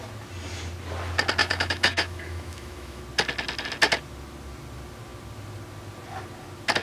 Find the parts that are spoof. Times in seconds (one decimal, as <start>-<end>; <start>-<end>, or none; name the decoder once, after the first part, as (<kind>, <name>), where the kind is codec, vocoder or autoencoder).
1.4-3.0 (autoencoder, DAC-VAE)